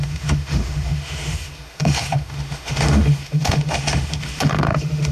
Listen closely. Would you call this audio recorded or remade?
remade